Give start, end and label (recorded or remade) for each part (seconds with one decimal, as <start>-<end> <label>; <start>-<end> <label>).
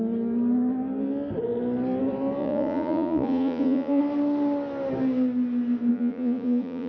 0.0-2.4 recorded; 2.4-4.0 remade; 4.0-5.9 recorded; 5.9-6.9 remade